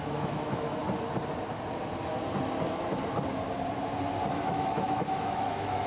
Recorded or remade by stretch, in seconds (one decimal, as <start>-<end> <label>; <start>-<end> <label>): 0.0-0.8 remade; 0.8-4.3 recorded; 4.3-5.9 remade